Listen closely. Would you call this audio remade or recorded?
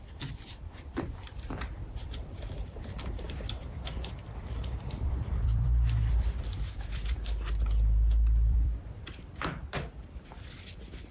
remade